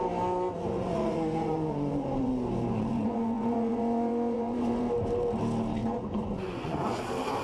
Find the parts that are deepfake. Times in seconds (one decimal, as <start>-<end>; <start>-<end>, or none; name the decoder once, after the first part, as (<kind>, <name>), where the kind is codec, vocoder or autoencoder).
0.6-4.8 (vocoder, Vocos); 5.8-7.0